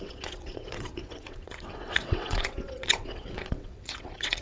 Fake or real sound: fake